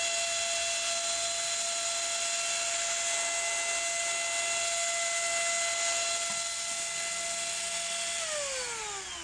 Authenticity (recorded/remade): recorded